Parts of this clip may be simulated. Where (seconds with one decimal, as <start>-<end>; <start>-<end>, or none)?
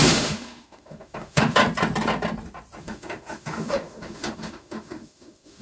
0.0-1.6; 2.8-5.6